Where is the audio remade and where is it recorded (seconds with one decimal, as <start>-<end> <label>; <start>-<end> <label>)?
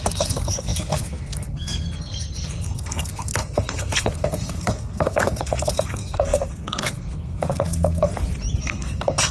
0.0-8.1 remade; 8.1-8.6 recorded; 8.6-9.3 remade